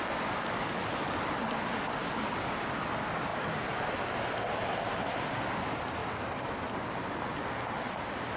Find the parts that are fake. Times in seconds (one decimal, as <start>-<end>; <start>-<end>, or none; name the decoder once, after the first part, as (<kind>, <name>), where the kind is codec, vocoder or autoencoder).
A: none